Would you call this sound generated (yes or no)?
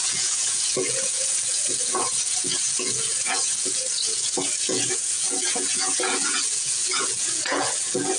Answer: yes